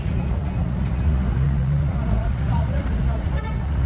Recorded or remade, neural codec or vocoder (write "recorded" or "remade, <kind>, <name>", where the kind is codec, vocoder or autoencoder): remade, vocoder, Vocos